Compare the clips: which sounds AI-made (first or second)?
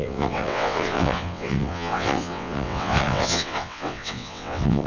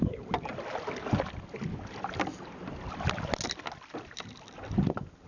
first